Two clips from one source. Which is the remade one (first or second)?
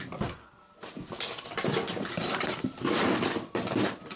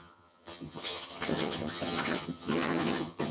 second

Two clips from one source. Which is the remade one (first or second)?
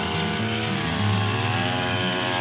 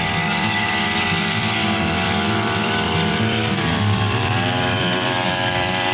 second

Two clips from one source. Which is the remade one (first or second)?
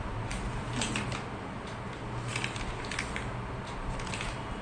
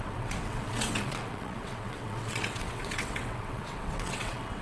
second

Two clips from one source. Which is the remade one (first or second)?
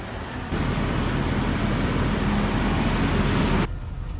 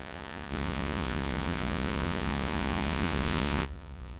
second